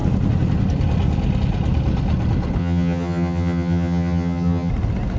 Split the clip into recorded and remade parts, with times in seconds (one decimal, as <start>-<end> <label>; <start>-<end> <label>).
0.0-2.6 recorded; 2.6-4.7 remade; 4.7-5.2 recorded

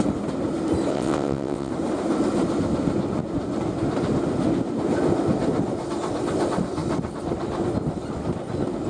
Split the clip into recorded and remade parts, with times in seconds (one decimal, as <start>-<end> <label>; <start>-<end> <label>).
0.0-0.9 recorded; 0.9-1.7 remade; 1.7-8.9 recorded

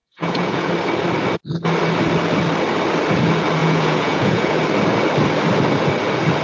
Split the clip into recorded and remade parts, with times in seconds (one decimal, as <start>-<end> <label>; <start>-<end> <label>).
0.0-0.7 remade; 0.7-3.6 recorded; 3.6-4.6 remade; 4.6-6.4 recorded

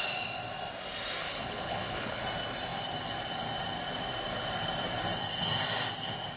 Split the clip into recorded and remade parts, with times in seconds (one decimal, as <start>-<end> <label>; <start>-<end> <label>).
0.0-1.2 recorded; 1.2-2.2 remade; 2.2-6.4 recorded